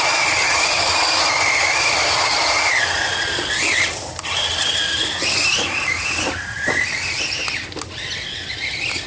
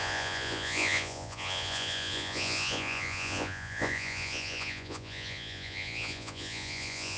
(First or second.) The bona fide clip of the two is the first